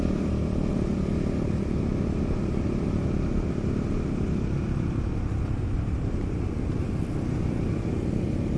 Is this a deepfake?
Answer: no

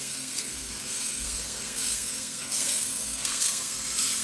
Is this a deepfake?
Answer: yes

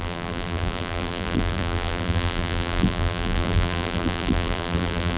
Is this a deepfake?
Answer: yes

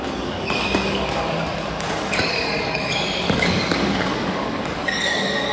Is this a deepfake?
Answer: yes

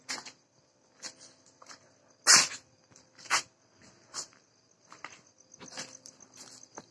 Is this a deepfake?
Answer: no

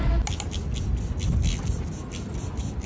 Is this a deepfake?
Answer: no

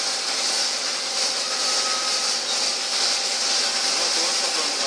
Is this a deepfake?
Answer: no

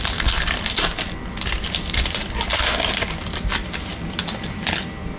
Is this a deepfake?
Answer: no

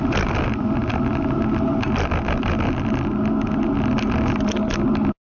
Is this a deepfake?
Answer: no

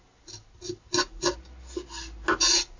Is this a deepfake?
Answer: no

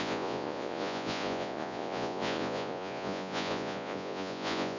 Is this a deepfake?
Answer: yes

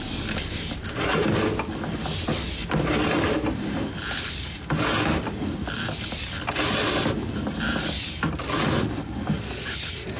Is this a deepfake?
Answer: no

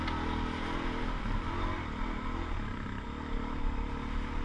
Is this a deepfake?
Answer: no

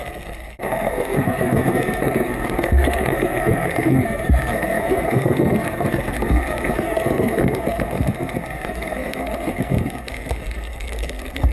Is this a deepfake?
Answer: yes